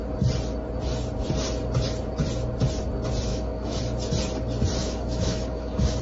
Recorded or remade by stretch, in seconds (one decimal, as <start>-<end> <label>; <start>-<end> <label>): 0.0-3.3 recorded; 3.3-3.8 remade; 3.8-4.8 recorded; 4.8-6.0 remade

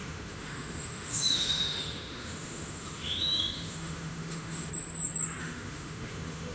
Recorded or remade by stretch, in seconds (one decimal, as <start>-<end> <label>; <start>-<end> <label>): 0.0-4.7 remade; 4.7-5.4 recorded; 5.4-6.5 remade

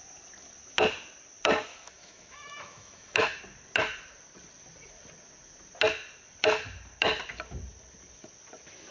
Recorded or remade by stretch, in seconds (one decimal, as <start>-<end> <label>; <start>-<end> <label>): 0.0-1.7 recorded; 1.7-3.4 remade; 3.4-8.9 recorded